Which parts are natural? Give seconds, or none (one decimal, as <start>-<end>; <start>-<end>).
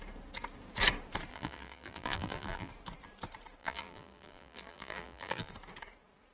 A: 0.0-1.3; 2.7-3.6; 5.5-6.3